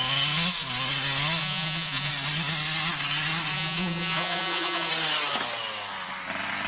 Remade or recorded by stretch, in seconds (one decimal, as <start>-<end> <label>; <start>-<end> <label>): 0.0-1.4 recorded; 1.4-2.1 remade; 2.1-3.5 recorded; 3.5-4.9 remade; 4.9-6.7 recorded